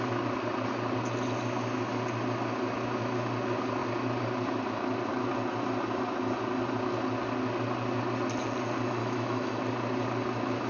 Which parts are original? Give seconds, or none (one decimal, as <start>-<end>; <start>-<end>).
0.0-9.0; 9.6-10.7